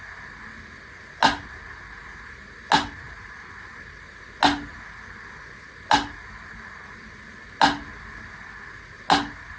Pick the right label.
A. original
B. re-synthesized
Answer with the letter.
A